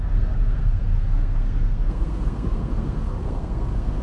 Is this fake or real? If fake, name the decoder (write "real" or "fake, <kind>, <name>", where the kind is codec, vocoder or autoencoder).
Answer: fake, codec, SNAC